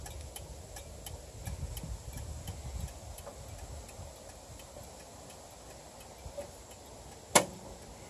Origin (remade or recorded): recorded